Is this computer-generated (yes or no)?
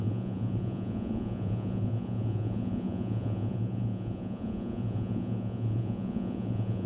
yes